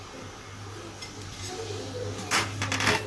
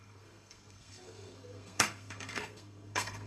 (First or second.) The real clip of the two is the first